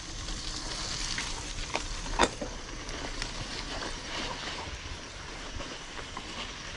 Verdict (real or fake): real